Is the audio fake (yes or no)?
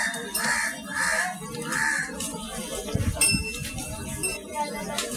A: no